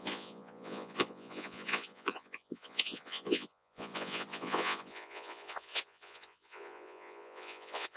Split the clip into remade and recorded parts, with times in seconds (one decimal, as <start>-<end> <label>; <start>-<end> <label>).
0.0-8.0 remade